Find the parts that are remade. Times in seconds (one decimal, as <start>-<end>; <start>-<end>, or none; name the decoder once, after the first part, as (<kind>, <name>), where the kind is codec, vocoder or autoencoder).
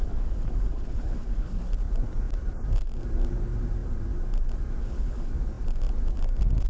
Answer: 0.0-1.7 (codec, HILCodec); 4.8-5.3